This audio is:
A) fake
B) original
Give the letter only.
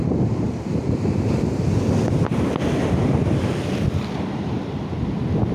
B